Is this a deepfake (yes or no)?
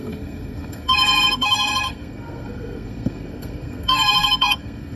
yes